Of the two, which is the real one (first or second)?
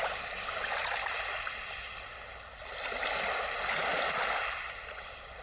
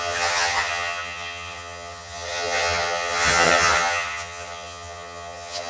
first